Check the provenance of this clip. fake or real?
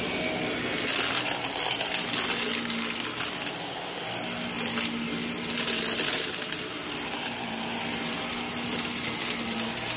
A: real